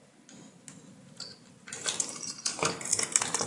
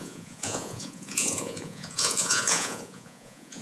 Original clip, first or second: first